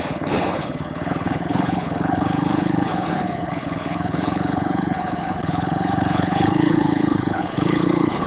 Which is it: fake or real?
fake